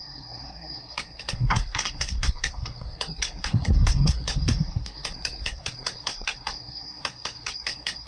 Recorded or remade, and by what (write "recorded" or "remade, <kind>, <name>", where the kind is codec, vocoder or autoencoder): remade, codec, SNAC